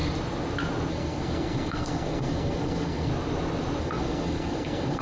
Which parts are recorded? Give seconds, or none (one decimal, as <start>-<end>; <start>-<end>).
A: 0.0-0.9; 3.1-3.8

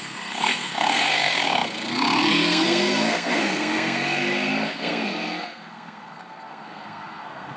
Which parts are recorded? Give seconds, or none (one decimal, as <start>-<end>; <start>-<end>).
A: none

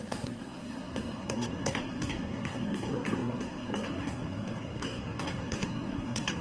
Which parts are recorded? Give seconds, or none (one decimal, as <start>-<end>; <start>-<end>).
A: none

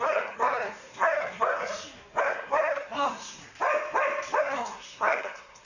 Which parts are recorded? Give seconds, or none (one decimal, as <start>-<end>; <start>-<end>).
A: 1.7-2.2; 3.4-4.4